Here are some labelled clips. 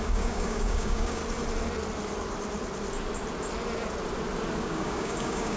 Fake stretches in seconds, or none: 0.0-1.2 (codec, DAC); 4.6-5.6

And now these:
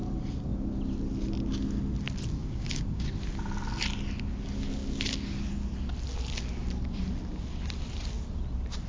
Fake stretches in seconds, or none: 2.4-3.1 (codec, DAC)